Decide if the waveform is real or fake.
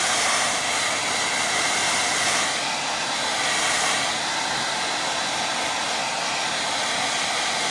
real